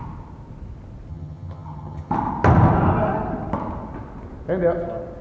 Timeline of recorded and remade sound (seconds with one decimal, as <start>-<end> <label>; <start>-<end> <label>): 0.0-1.1 recorded; 1.1-2.1 remade; 2.1-5.2 recorded

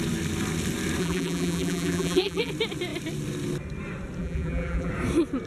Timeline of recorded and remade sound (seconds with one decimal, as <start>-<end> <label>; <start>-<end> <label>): 0.0-1.0 recorded; 1.0-2.5 remade; 2.5-4.2 recorded; 4.2-4.9 remade; 4.9-5.5 recorded

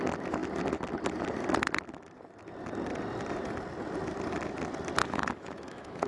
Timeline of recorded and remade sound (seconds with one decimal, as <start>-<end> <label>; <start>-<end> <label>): 0.0-5.0 recorded; 5.0-6.1 remade

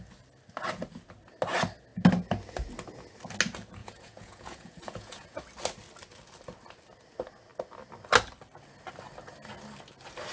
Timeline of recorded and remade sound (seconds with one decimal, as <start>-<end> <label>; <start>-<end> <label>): 0.0-3.8 recorded; 3.8-5.4 remade; 5.4-10.3 recorded

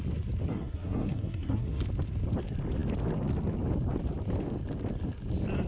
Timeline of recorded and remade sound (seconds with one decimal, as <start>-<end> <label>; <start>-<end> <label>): 0.0-0.5 recorded; 0.5-1.8 remade; 1.8-5.7 recorded